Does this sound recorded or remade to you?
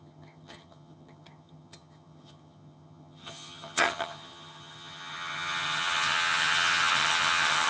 remade